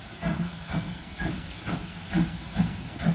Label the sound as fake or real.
fake